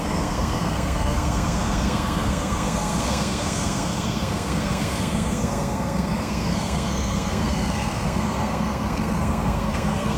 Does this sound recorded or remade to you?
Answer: remade